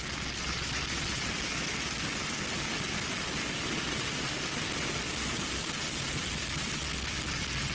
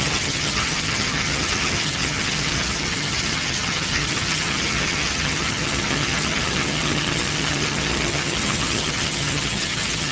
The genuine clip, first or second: first